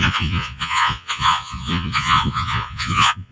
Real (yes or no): no